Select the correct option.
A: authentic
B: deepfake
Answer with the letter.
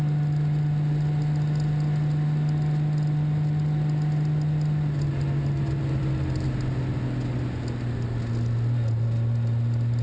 A